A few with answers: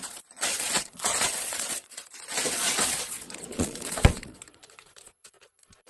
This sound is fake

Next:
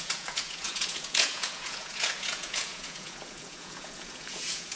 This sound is fake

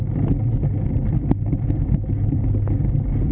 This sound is real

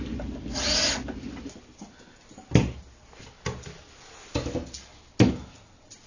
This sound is real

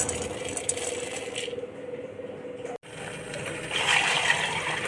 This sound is real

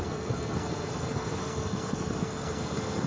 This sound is fake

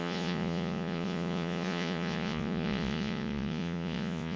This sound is fake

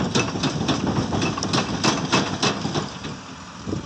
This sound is real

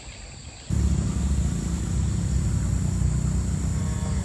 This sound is real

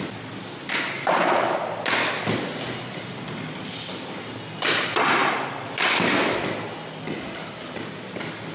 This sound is real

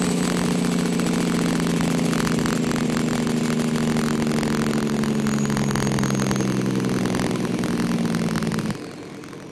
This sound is real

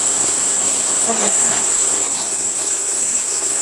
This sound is fake